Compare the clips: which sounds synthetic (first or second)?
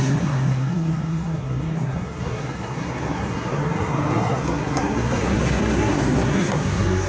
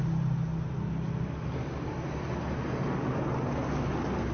first